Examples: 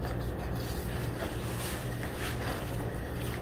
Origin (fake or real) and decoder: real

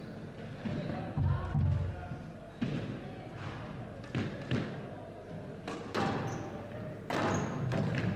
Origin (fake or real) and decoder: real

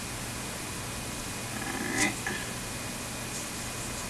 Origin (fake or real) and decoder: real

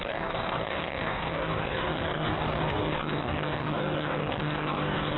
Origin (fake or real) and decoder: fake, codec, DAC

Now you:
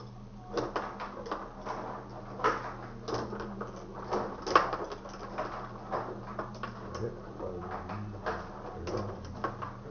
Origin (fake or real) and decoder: real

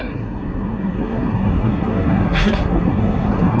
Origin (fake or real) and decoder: fake, codec, SNAC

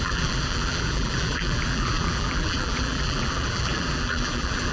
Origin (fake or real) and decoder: fake, vocoder, BigVGAN v2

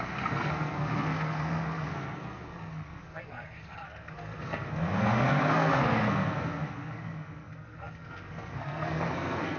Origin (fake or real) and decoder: fake, codec, SNAC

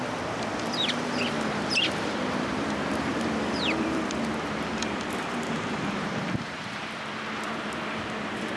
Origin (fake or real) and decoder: fake, vocoder, BigVGAN v2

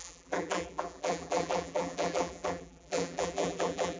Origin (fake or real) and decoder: fake, vocoder, BigVGAN v2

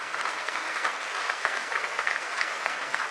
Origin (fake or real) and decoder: fake, codec, SNAC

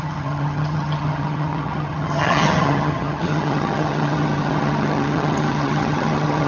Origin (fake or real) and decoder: fake, vocoder, HiFi-GAN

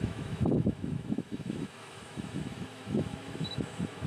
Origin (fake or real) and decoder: fake, autoencoder, DAC-VAE